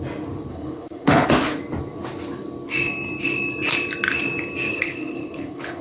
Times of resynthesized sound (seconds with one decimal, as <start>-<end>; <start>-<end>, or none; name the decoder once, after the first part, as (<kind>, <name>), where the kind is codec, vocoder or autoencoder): 0.5-1.3 (codec, HILCodec); 4.7-5.8